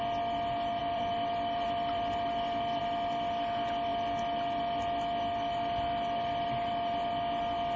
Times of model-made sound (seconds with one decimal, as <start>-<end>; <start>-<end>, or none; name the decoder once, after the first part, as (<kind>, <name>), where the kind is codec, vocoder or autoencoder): 0.8-2.8 (vocoder, BigVGAN v2)